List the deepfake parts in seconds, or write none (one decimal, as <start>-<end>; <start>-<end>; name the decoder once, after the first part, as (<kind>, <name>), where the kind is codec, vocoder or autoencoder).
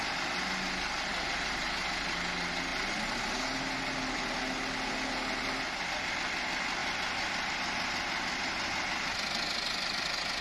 1.1-2.0 (vocoder, BigVGAN v2)